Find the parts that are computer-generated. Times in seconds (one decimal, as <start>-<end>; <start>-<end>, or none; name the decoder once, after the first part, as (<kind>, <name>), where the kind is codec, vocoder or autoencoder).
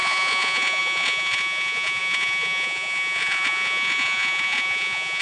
0.0-5.2 (vocoder, Vocos)